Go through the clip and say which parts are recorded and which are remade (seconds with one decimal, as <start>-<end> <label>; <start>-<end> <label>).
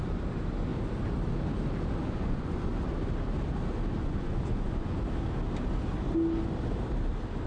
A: 0.0-2.0 recorded; 2.0-2.7 remade; 2.7-4.0 recorded; 4.0-5.0 remade; 5.0-7.5 recorded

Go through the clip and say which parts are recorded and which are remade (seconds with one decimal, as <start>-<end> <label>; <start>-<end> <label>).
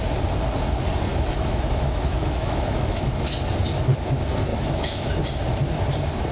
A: 0.0-1.1 recorded; 1.1-3.1 remade; 3.1-4.5 recorded; 4.5-5.1 remade; 5.1-6.3 recorded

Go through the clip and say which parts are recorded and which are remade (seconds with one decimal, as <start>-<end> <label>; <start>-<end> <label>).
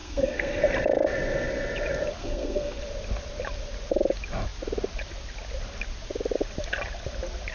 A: 0.0-0.6 remade; 0.6-2.2 recorded; 2.2-2.8 remade; 2.8-7.5 recorded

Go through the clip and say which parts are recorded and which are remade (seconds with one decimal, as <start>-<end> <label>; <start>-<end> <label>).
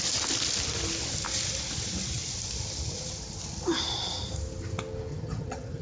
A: 0.0-5.1 recorded; 5.1-5.8 remade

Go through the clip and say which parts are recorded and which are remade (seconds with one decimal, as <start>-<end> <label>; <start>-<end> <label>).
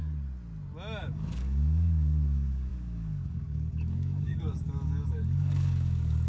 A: 0.0-1.0 recorded; 1.0-6.3 remade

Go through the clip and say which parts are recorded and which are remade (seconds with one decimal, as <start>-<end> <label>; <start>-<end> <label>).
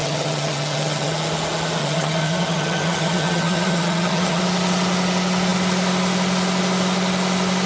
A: 0.0-1.1 remade; 1.1-1.8 recorded; 1.8-4.4 remade; 4.4-7.7 recorded